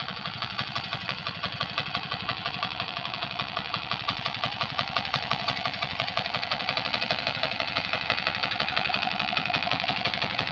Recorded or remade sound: remade